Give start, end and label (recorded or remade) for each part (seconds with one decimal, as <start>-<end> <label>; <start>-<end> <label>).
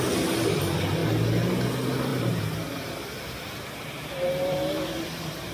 0.0-2.1 recorded; 2.1-5.5 remade